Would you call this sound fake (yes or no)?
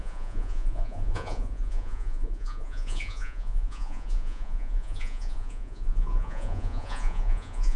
yes